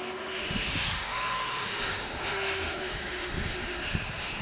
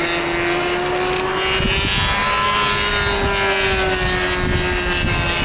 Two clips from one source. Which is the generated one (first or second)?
first